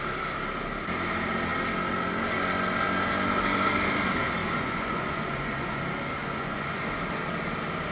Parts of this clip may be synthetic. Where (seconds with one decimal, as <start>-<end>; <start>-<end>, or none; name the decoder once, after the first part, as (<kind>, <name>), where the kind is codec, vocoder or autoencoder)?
4.4-5.8 (vocoder, Vocos); 6.2-6.8